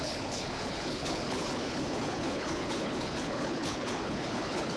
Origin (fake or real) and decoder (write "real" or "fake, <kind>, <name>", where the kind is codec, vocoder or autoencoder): fake, codec, HILCodec